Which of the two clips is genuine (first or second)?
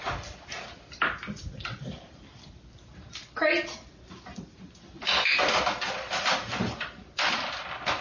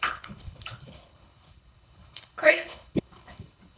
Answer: first